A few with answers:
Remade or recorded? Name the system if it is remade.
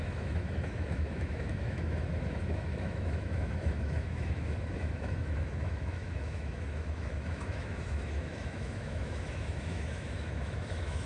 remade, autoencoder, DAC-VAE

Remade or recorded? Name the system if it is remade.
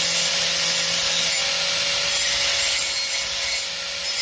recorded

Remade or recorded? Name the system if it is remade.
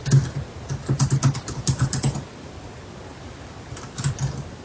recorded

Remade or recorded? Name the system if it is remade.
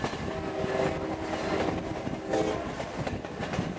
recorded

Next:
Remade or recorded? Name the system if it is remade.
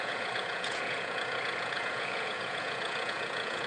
remade, vocoder, Vocos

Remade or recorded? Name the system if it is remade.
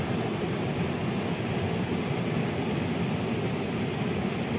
recorded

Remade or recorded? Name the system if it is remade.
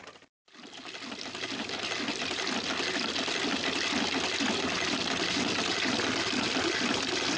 recorded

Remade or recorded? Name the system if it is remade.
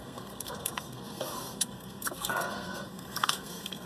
remade, codec, SNAC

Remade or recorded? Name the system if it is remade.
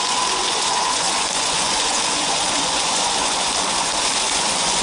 remade, vocoder, Vocos